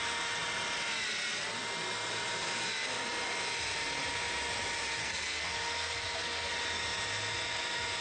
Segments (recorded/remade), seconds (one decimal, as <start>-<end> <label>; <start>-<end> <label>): 0.0-5.0 recorded; 5.0-6.5 remade; 6.5-8.0 recorded

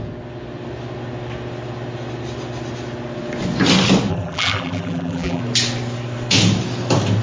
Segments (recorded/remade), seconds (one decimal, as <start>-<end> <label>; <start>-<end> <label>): 0.0-4.1 recorded; 4.1-5.4 remade; 5.4-7.2 recorded